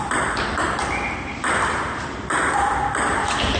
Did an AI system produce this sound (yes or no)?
yes